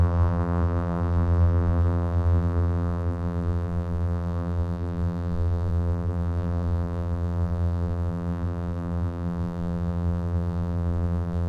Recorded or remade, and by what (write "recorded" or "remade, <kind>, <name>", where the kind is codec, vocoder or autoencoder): remade, vocoder, BigVGAN v2